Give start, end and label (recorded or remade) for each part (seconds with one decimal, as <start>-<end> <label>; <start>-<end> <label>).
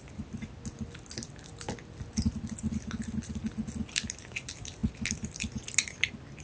0.0-6.4 recorded